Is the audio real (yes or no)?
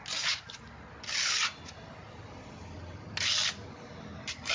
yes